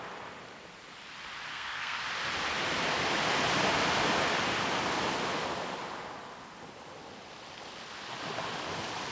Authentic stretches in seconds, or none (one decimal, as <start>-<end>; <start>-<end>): 0.0-1.5; 2.0-9.1